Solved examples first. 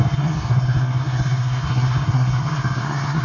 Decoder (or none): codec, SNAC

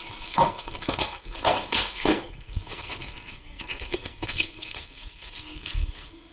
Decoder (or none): codec, SNAC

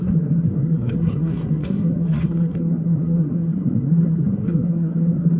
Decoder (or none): codec, SNAC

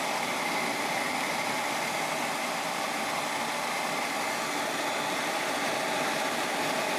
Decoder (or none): none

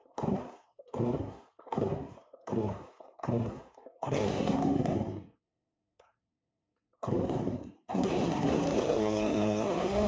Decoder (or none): codec, SNAC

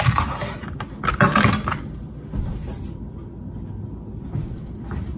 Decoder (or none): none